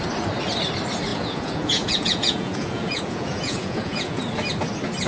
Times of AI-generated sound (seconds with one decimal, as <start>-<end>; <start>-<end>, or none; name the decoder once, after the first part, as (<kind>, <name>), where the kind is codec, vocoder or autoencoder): 1.1-4.2 (vocoder, Vocos)